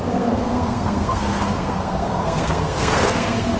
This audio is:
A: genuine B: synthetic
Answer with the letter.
B